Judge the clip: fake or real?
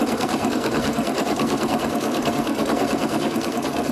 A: fake